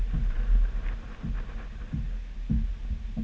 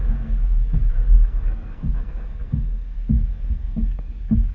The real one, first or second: first